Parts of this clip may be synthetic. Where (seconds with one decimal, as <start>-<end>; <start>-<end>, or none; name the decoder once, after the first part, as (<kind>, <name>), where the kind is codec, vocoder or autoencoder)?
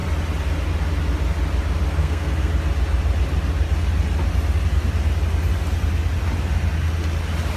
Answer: 2.0-2.5 (codec, SNAC)